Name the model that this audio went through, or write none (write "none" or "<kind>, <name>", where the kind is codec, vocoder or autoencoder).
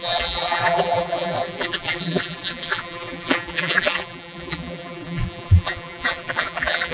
vocoder, BigVGAN v2